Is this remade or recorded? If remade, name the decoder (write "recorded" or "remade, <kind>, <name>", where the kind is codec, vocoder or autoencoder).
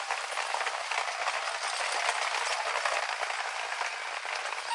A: recorded